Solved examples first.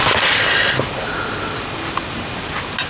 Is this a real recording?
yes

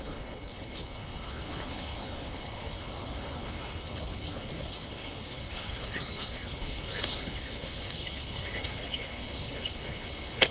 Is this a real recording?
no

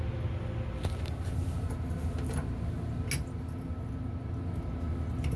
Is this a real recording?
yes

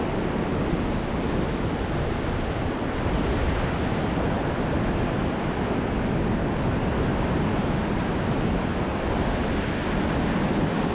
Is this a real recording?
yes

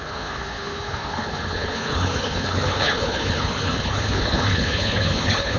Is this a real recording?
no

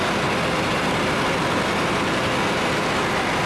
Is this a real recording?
yes